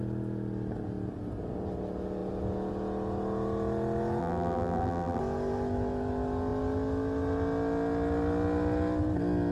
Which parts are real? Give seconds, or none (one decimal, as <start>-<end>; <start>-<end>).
0.0-4.2; 5.2-9.5